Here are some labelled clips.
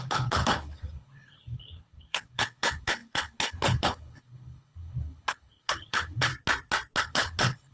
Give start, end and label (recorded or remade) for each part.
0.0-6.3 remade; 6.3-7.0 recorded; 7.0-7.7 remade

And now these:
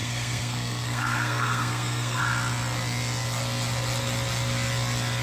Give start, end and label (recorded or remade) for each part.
0.0-2.2 remade; 2.2-5.2 recorded

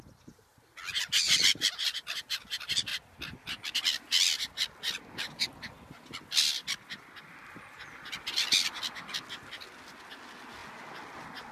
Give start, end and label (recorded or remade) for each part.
0.0-11.5 recorded

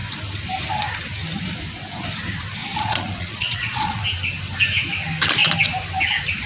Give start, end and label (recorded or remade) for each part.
0.0-2.6 recorded; 2.6-4.0 remade; 4.0-6.5 recorded